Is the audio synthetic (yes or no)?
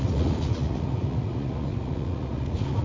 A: yes